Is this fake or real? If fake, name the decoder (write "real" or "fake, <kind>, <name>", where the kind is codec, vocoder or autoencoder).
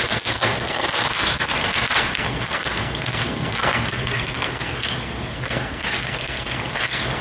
fake, codec, SNAC